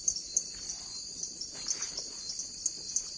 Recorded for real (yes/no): yes